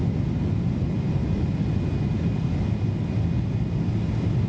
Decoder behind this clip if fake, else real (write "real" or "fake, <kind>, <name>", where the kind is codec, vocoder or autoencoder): real